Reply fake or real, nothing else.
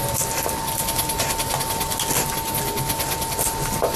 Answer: real